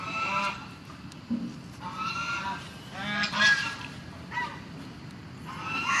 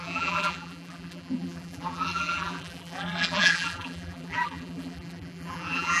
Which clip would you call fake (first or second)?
second